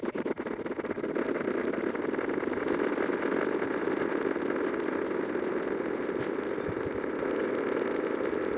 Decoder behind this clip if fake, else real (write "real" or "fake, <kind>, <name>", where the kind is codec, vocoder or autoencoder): real